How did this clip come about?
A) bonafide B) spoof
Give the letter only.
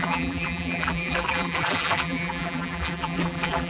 B